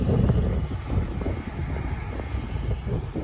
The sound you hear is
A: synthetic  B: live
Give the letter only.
B